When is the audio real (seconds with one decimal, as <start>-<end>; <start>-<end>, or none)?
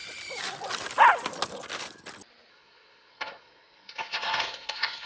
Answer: 0.0-2.5